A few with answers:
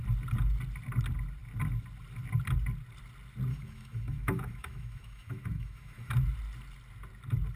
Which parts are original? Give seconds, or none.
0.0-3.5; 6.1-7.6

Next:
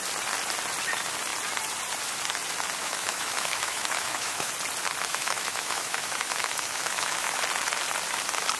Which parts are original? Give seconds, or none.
0.0-2.8; 4.5-5.1; 7.4-8.6

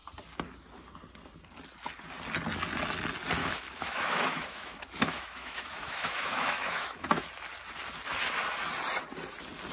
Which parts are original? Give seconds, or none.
0.0-3.4; 7.1-9.7

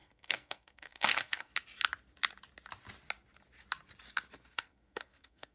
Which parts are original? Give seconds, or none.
1.5-4.5

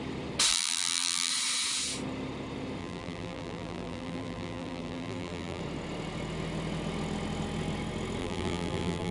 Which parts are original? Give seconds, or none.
0.0-0.5; 1.3-2.8; 5.6-8.2